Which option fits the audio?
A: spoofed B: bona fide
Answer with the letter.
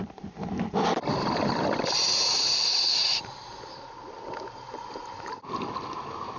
A